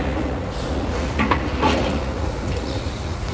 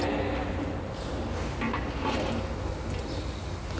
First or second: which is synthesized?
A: first